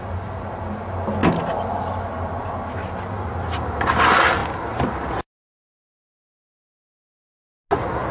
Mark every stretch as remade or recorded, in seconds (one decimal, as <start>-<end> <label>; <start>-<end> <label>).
0.0-8.1 recorded